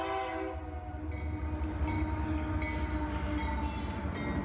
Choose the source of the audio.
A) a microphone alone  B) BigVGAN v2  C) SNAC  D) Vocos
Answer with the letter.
A